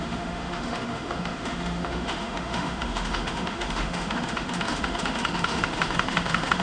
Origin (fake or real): fake